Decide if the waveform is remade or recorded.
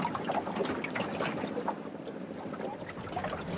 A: recorded